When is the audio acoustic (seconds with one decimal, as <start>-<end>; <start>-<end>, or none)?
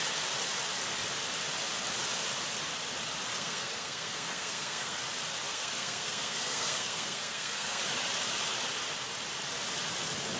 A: 0.0-3.3; 5.0-5.5; 7.8-10.4